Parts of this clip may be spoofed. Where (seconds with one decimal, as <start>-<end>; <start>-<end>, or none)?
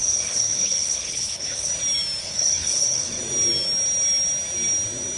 0.0-1.7; 2.2-3.2